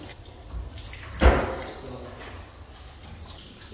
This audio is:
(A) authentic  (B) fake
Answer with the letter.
A